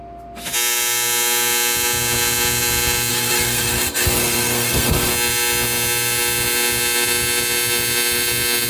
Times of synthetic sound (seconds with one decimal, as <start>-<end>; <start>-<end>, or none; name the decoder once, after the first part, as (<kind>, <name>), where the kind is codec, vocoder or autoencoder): 3.1-5.1 (codec, SNAC)